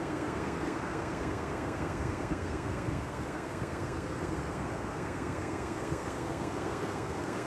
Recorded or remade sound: remade